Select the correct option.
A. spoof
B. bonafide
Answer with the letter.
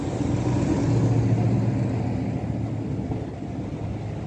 B